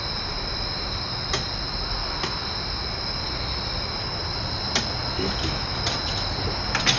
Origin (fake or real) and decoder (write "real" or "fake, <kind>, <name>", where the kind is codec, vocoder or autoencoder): real